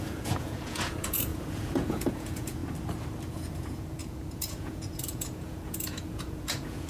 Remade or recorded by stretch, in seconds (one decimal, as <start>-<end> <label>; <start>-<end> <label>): 0.0-2.6 remade; 2.6-3.3 recorded; 3.3-6.9 remade